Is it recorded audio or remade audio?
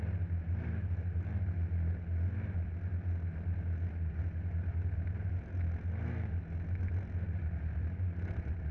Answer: recorded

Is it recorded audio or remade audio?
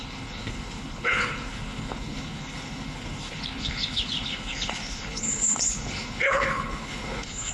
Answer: remade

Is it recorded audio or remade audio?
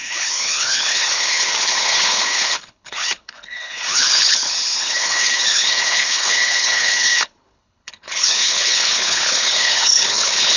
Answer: remade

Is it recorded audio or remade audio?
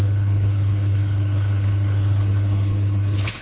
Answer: remade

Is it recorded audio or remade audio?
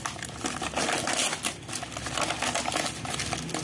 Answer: recorded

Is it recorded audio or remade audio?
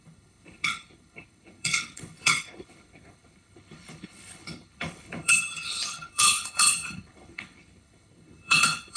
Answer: remade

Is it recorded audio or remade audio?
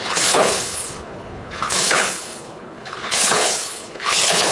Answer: remade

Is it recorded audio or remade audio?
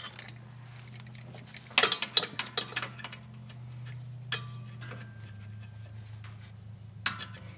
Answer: recorded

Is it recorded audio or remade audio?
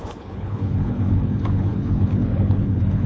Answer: remade